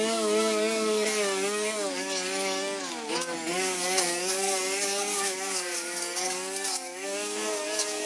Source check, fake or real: fake